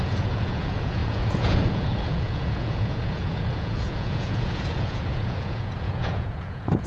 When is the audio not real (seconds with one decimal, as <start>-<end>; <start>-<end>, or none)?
0.0-6.9

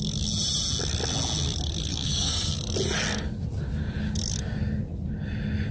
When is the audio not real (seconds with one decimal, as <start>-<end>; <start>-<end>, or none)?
1.9-2.5

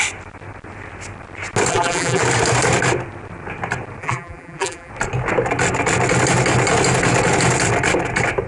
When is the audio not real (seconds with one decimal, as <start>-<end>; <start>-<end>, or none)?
1.7-2.2; 4.0-4.9